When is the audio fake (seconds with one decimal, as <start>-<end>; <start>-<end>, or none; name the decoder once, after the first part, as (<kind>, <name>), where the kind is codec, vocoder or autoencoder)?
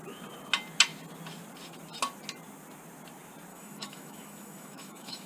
3.5-5.3 (autoencoder, DAC-VAE)